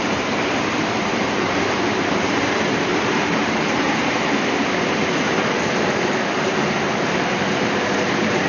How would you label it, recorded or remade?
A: remade